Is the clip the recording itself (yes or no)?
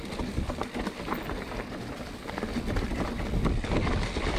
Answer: yes